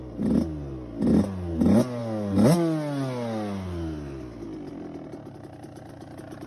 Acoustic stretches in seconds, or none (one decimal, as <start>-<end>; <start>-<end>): 0.0-6.5